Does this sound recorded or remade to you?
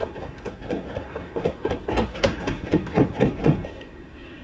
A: remade